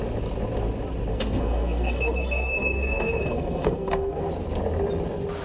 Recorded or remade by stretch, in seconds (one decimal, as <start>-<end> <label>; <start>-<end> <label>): 0.0-1.1 recorded; 1.1-4.3 remade; 4.3-5.4 recorded